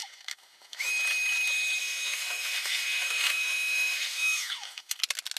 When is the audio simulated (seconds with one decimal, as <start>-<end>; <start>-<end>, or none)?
0.0-0.9; 1.8-5.0